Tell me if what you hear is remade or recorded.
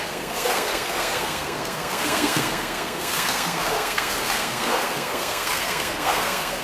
remade